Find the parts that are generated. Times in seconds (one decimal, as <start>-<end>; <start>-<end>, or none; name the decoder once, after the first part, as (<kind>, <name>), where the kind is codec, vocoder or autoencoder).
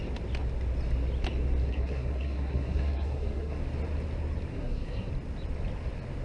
1.6-3.6 (codec, SNAC); 4.5-5.1